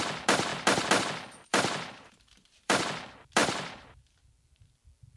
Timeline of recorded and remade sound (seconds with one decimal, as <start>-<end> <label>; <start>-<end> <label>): 0.0-1.5 recorded; 1.5-2.8 remade; 2.8-3.4 recorded; 3.4-5.2 remade